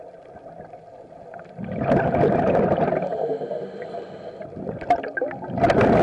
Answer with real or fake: real